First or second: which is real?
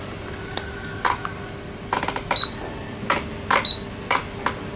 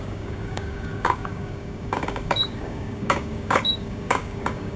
first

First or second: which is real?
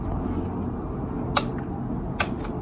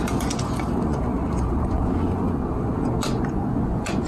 first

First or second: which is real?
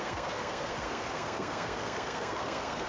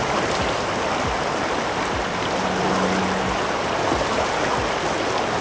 second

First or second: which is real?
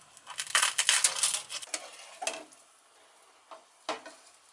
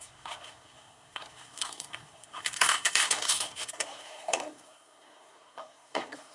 first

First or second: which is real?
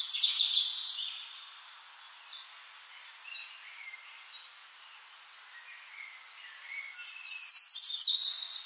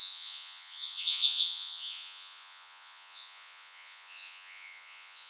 first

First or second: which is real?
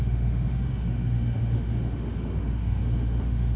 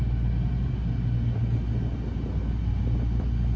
second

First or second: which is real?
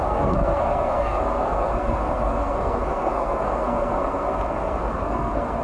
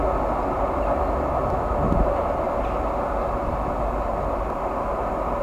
second